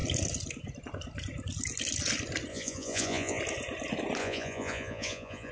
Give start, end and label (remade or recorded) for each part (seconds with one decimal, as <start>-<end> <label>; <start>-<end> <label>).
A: 0.0-2.5 recorded; 2.5-3.4 remade; 3.4-4.2 recorded; 4.2-5.5 remade